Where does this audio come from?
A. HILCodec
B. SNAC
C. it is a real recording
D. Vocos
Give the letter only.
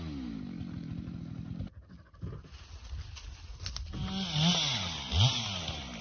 C